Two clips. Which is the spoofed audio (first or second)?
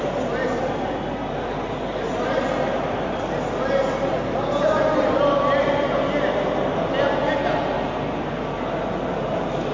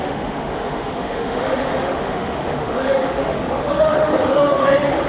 second